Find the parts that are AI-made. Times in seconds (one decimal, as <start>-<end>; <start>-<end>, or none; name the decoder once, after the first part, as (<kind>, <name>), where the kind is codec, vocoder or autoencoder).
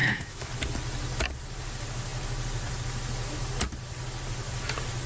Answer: 0.0-0.5 (autoencoder, DAC-VAE)